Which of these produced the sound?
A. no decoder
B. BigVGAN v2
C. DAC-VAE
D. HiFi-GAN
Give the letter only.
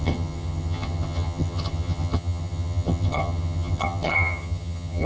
D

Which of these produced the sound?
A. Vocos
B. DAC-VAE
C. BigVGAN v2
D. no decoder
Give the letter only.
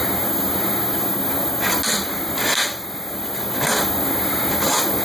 D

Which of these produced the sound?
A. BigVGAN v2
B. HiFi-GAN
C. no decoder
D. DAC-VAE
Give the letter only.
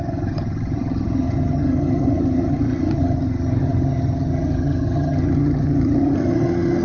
B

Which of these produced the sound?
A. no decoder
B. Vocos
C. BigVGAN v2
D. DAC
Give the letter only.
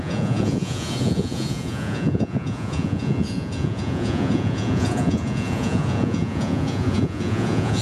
B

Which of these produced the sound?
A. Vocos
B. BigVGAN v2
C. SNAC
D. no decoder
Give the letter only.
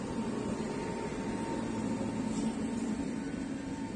D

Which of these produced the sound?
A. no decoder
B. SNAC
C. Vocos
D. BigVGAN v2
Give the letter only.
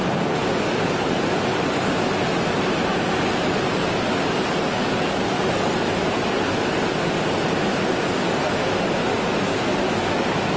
A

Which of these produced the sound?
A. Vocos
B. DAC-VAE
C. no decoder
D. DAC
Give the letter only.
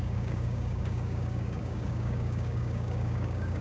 D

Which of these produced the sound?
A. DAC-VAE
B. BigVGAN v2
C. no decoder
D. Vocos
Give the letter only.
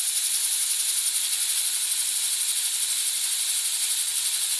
C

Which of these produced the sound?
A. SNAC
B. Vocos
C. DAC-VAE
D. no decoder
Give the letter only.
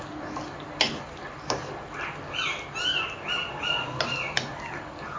D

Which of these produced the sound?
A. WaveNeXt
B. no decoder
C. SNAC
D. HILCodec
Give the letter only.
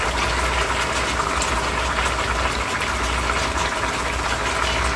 B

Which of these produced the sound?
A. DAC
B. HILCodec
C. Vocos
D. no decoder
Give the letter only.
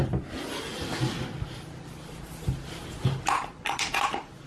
D